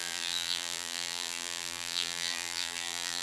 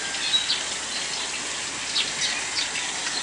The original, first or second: second